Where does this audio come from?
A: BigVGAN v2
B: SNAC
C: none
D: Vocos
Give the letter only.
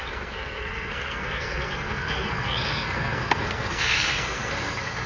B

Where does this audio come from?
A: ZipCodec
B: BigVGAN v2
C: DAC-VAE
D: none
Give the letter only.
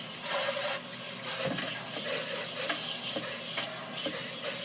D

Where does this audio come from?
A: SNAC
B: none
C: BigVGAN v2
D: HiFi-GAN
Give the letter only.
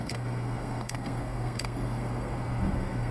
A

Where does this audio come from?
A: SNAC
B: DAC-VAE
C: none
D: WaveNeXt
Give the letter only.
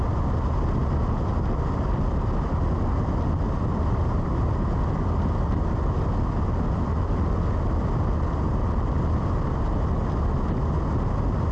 C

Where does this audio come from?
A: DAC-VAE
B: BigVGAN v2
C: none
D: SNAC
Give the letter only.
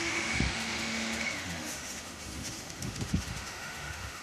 A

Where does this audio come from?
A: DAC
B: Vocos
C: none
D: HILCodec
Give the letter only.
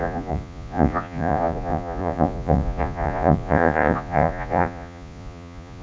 B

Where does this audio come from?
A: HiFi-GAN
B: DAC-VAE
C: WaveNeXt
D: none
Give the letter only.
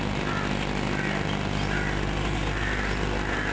D